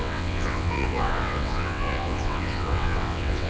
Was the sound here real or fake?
fake